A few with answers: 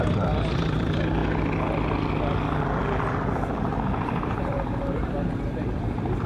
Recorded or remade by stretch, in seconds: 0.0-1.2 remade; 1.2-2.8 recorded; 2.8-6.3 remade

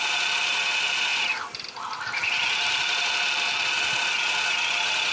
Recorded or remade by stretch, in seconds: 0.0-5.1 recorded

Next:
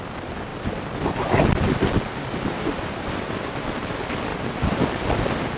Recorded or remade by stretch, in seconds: 0.0-5.6 recorded

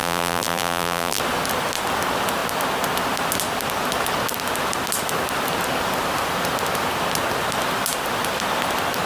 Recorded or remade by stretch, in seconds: 0.0-1.2 remade; 1.2-9.1 recorded